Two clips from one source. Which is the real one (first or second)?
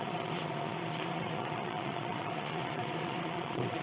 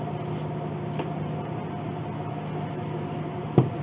second